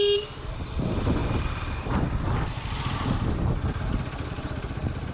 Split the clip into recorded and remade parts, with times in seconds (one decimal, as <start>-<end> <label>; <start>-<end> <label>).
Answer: 0.0-5.1 recorded